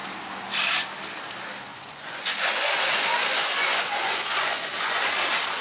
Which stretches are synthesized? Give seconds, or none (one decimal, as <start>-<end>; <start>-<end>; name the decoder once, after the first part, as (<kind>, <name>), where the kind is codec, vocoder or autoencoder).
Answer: 1.7-5.1 (vocoder, Vocos)